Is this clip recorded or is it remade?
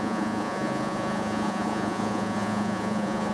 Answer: remade